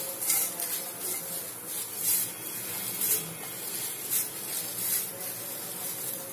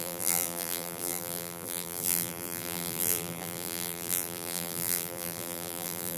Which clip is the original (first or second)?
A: first